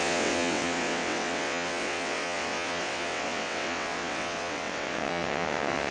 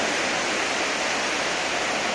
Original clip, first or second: second